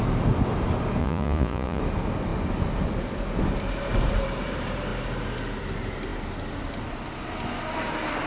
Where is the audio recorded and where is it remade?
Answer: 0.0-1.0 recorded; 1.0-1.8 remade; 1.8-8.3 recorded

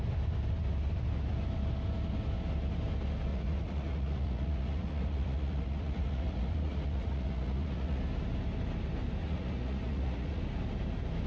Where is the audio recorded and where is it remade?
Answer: 0.0-3.3 recorded; 3.3-8.0 remade; 8.0-9.2 recorded; 9.2-10.4 remade; 10.4-11.3 recorded

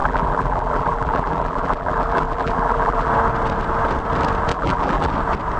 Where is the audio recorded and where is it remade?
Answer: 0.0-3.1 remade; 3.1-4.5 recorded; 4.5-5.1 remade; 5.1-5.6 recorded

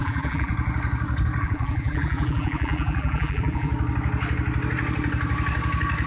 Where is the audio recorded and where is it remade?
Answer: 0.0-0.5 remade; 0.5-1.4 recorded; 1.4-3.7 remade; 3.7-6.1 recorded

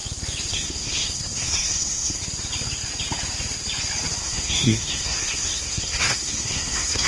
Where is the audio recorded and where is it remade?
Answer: 0.0-0.5 recorded; 0.5-2.2 remade; 2.2-4.2 recorded; 4.2-7.1 remade

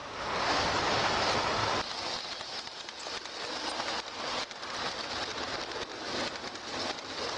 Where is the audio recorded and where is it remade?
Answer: 0.0-0.6 remade; 0.6-7.4 recorded

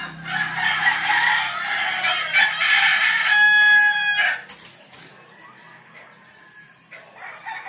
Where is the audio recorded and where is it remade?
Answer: 0.0-7.7 recorded

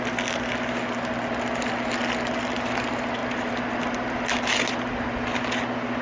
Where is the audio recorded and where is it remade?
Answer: 0.0-6.0 recorded